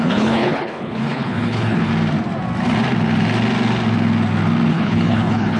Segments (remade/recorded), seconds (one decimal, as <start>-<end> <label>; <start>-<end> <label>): 0.0-1.9 remade; 1.9-4.7 recorded; 4.7-5.6 remade